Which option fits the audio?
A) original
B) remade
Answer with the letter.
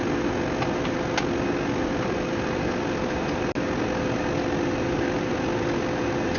A